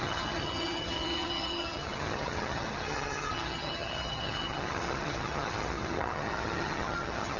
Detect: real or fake fake